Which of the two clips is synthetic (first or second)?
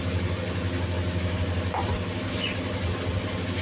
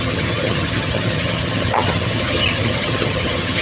second